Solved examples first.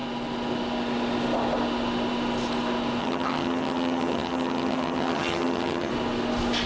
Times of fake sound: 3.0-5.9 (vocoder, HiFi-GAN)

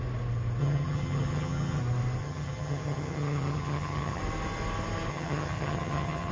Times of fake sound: 0.6-1.8 (vocoder, HiFi-GAN); 2.2-4.2; 5.1-6.3